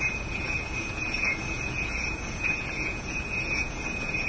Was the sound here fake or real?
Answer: fake